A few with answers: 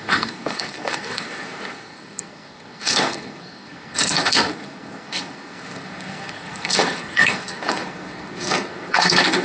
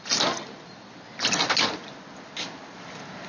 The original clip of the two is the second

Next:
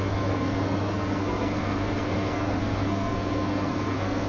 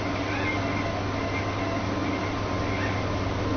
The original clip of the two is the second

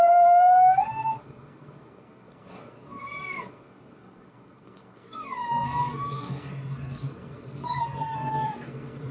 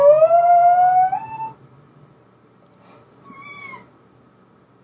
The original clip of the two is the second